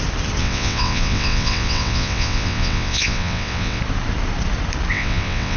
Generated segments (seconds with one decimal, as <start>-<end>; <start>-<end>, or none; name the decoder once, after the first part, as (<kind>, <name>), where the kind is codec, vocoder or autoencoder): 0.4-3.8 (vocoder, WaveNeXt); 4.9-5.6